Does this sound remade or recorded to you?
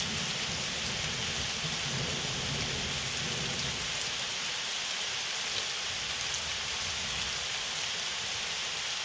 recorded